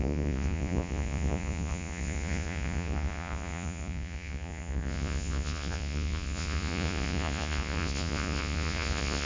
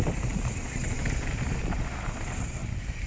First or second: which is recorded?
second